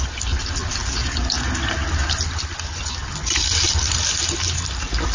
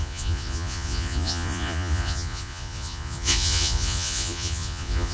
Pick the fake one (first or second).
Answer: second